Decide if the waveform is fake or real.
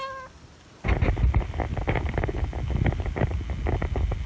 real